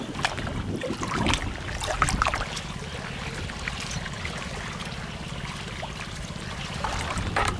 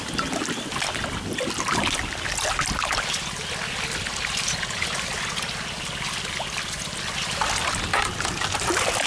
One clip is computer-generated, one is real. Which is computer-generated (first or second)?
first